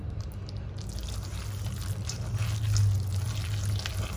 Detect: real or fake real